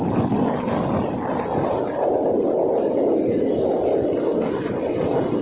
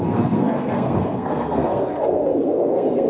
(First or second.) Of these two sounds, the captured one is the first